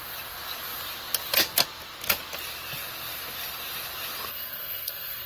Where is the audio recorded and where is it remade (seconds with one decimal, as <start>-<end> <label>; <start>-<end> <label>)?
0.0-4.3 recorded; 4.3-5.3 remade